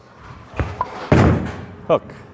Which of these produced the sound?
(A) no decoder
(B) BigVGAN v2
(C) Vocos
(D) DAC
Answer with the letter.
A